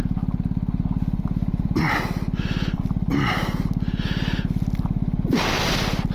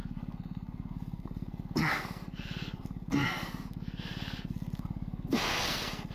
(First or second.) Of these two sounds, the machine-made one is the second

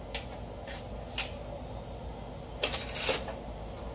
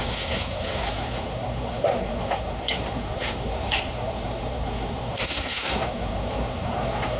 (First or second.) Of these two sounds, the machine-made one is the second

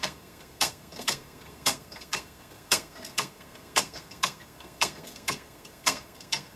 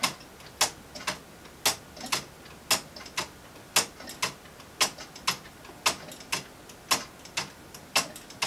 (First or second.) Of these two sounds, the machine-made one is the first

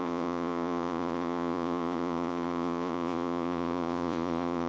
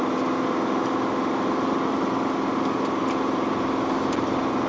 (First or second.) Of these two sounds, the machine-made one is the first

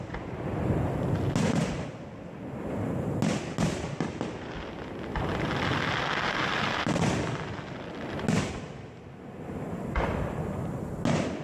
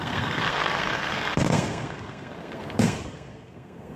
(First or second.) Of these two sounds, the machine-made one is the second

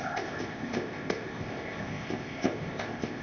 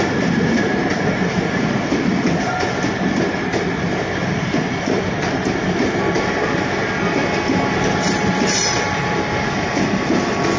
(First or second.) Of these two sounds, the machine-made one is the first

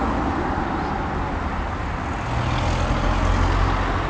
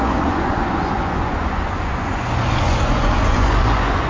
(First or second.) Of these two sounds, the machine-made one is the second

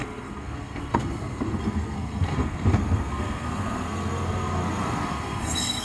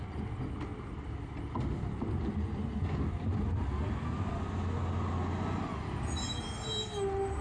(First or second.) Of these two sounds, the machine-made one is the first